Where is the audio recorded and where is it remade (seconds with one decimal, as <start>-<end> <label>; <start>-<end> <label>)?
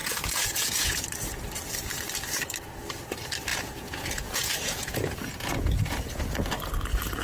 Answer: 0.0-1.0 remade; 1.0-3.5 recorded; 3.5-6.2 remade; 6.2-7.2 recorded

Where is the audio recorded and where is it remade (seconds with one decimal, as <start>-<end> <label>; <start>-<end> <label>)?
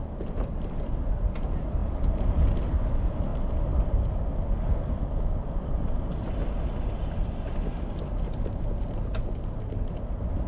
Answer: 0.0-10.5 recorded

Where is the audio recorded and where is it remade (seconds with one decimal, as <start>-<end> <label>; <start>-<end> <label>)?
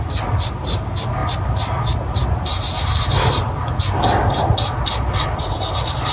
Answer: 0.0-6.1 recorded